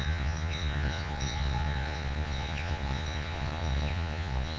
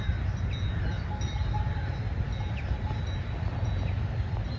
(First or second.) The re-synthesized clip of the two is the first